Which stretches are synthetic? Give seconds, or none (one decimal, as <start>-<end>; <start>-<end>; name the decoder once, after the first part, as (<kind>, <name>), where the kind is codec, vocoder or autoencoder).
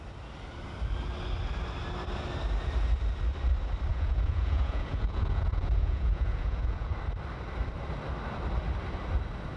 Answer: 3.9-6.9 (vocoder, Vocos)